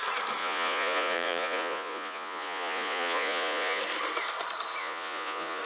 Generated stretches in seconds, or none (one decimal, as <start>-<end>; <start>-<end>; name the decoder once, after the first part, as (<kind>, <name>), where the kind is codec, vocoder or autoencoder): 0.4-3.8 (vocoder, Vocos); 4.8-5.6